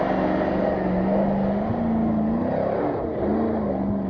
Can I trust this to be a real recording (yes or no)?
yes